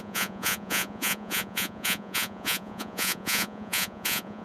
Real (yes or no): no